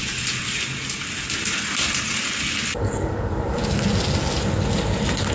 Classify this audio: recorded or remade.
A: recorded